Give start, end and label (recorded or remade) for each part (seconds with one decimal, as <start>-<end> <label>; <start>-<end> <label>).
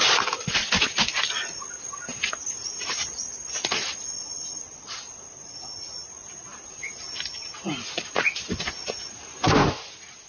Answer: 0.0-10.3 recorded